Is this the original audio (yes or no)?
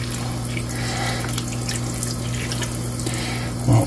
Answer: yes